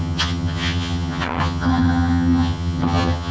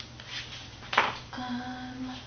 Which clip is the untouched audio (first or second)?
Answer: second